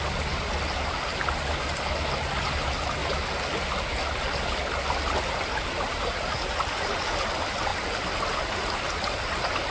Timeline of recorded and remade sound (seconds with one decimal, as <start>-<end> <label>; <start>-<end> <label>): 0.0-9.7 recorded

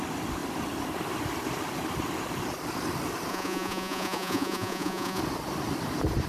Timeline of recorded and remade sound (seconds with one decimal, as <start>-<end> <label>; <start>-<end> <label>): 0.0-3.3 recorded; 3.3-5.2 remade; 5.2-6.3 recorded

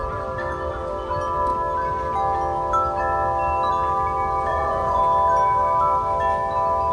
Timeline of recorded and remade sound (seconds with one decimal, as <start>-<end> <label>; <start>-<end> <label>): 0.0-4.5 recorded; 4.5-5.0 remade; 5.0-6.9 recorded

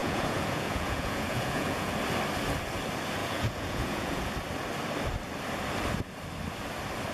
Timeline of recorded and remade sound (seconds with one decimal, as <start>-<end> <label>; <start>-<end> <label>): 0.0-1.9 remade; 1.9-3.2 recorded; 3.2-4.3 remade; 4.3-7.1 recorded

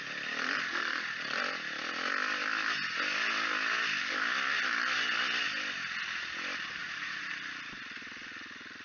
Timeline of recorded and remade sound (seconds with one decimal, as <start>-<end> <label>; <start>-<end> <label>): 0.0-6.8 recorded; 6.8-7.3 remade; 7.3-8.8 recorded

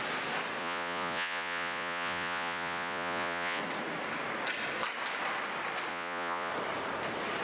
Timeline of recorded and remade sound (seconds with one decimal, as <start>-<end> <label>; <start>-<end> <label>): 0.0-0.6 recorded; 0.6-3.6 remade; 3.6-5.9 recorded; 5.9-6.5 remade; 6.5-7.4 recorded

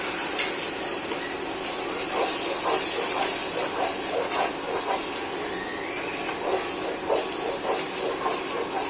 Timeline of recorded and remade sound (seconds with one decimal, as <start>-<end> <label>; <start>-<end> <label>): 0.0-8.9 recorded

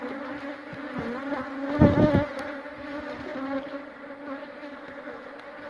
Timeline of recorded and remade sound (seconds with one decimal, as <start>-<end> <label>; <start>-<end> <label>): 0.0-5.7 recorded